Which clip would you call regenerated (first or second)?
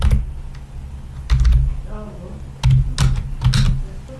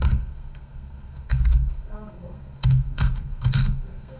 second